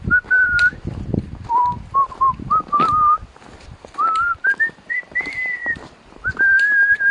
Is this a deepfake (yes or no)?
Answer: yes